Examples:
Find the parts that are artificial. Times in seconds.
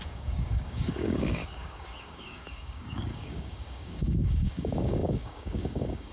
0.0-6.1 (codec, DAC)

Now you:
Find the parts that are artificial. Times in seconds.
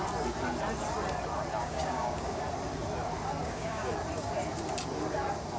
1.6-2.4 (codec, DAC); 3.4-3.9